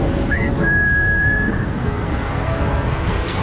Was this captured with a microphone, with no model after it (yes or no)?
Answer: no